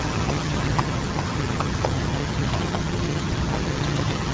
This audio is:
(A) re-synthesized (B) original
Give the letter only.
A